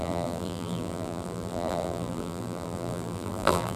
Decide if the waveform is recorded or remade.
remade